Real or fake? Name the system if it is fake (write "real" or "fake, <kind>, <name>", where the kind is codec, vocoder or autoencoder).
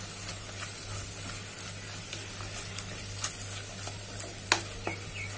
real